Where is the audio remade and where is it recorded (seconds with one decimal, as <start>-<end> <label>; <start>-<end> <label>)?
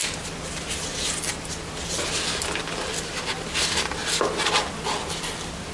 0.0-5.7 recorded